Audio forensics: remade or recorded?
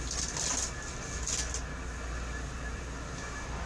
recorded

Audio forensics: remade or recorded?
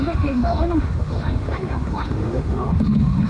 remade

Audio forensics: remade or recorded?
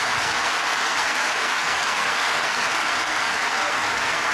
remade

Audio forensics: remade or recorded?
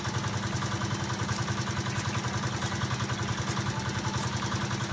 recorded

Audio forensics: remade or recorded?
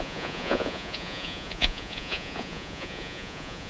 remade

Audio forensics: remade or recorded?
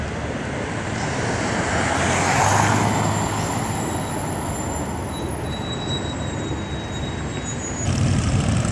recorded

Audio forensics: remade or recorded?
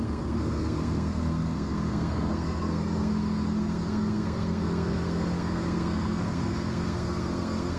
remade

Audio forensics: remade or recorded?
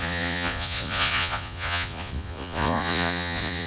remade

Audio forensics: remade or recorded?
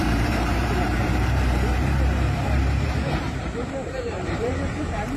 remade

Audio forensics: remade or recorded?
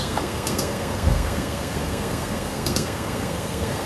remade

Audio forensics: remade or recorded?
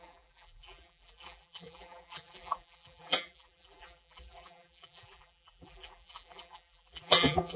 remade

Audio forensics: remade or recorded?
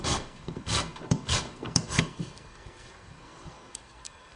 remade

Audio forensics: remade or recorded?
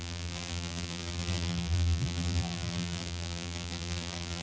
remade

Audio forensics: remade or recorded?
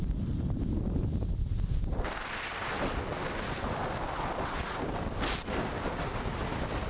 recorded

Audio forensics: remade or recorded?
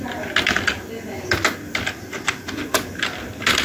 recorded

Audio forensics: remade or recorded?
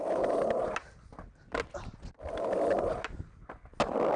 recorded